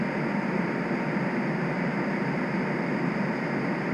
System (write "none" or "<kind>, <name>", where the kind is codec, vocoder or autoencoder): none